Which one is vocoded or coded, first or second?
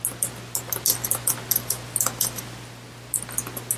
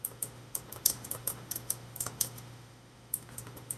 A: second